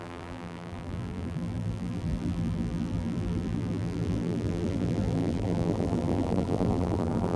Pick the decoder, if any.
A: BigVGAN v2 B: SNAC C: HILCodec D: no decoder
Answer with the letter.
A